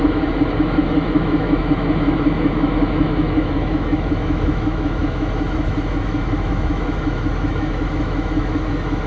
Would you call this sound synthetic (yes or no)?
yes